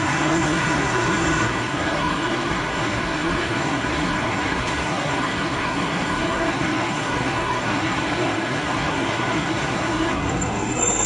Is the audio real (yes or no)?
no